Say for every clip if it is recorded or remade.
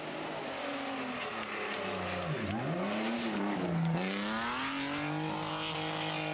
recorded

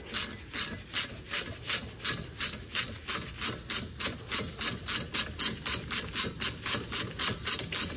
recorded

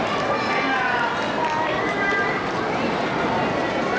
recorded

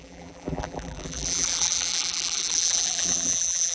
remade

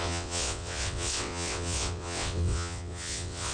remade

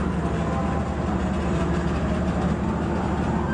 recorded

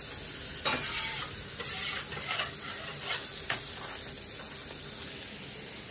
recorded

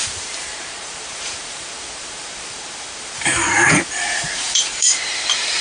remade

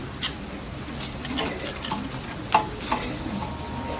recorded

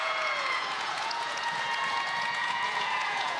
remade